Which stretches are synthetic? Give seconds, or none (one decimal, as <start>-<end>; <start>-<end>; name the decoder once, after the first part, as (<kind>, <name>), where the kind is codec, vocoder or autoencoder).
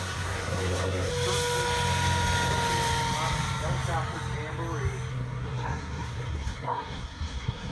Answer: 0.0-1.1 (codec, SNAC); 5.1-7.7